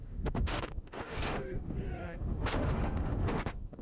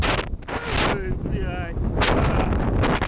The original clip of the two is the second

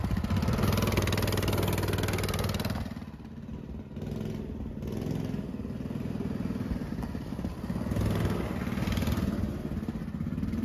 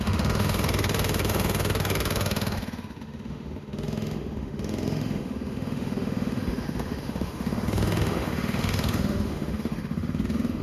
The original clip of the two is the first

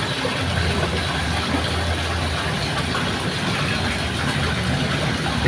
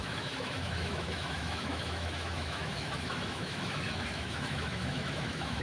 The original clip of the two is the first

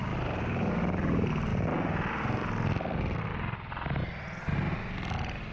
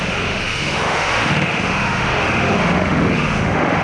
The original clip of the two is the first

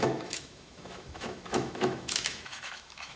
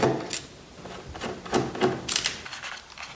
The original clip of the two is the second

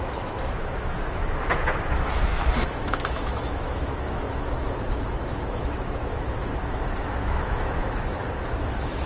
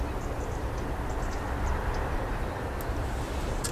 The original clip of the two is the second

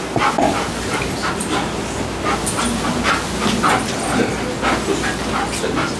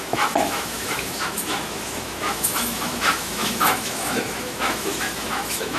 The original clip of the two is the first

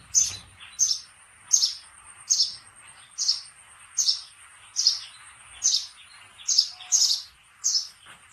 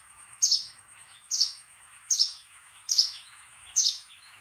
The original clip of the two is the first